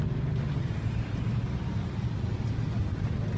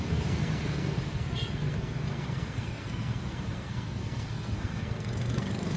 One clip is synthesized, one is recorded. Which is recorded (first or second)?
first